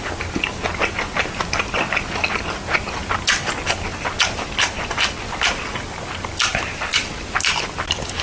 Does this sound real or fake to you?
real